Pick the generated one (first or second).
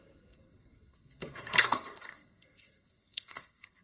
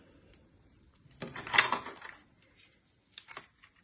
first